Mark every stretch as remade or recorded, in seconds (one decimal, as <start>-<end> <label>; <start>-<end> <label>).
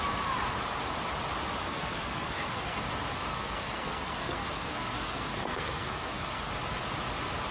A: 0.0-1.6 recorded; 1.6-2.8 remade; 2.8-3.3 recorded; 3.3-6.5 remade; 6.5-7.5 recorded